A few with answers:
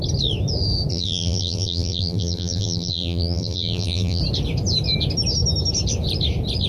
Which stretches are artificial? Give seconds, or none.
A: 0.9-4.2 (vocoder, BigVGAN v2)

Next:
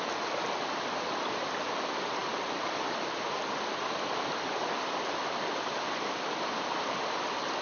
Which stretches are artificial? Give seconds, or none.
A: none

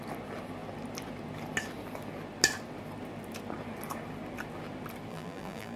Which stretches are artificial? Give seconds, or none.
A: 5.1-5.8 (vocoder, BigVGAN v2)

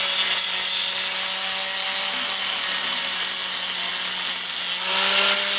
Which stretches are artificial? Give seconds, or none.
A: none

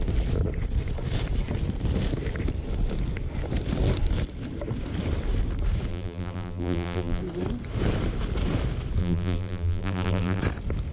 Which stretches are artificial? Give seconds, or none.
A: 5.9-7.2 (vocoder, BigVGAN v2); 9.0-10.4

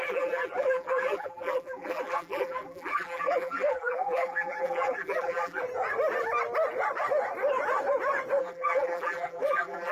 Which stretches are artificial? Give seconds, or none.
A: 0.0-5.6 (vocoder, BigVGAN v2); 8.4-9.9

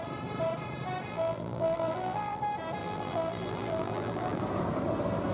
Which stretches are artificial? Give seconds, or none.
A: 1.1-2.4 (vocoder, BigVGAN v2); 2.8-4.4